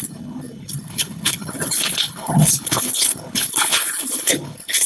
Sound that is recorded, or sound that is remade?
remade